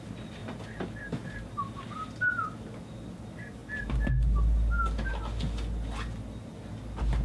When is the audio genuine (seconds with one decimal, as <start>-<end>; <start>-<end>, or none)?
0.0-7.2